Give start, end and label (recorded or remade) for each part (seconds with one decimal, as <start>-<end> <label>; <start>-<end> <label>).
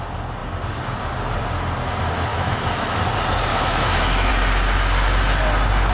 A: 0.0-2.3 recorded; 2.3-3.0 remade; 3.0-3.5 recorded; 3.5-4.3 remade; 4.3-5.9 recorded